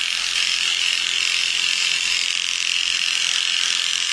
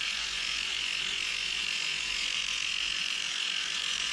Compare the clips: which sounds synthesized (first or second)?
second